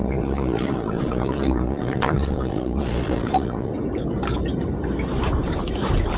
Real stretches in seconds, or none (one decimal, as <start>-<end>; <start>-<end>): 3.7-6.2